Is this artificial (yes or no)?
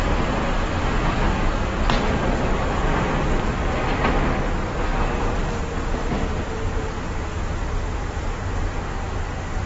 no